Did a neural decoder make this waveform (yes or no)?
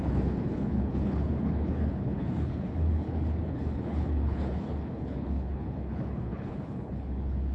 yes